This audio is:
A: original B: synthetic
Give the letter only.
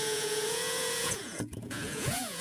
B